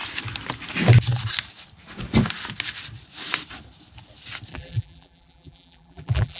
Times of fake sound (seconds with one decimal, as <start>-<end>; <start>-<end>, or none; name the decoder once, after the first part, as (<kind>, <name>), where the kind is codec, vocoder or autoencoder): 4.5-6.4 (vocoder, BigVGAN v2)